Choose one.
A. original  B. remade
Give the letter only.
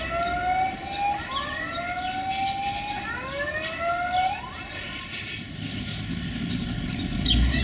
A